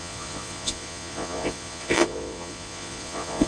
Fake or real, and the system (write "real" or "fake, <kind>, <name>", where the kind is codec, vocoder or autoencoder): fake, vocoder, Vocos